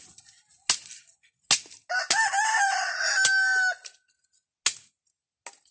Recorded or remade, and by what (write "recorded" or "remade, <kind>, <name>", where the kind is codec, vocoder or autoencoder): recorded